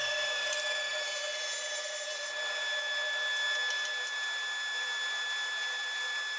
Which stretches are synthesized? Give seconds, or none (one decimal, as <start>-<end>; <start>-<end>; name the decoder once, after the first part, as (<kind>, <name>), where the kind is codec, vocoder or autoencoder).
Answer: none

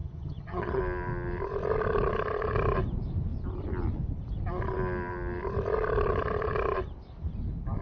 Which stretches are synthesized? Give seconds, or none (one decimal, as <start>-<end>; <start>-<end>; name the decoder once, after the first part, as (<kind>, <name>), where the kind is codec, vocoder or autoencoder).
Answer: 0.0-0.8 (vocoder, HiFi-GAN)